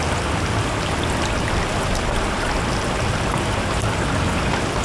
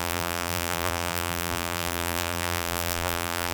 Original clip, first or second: first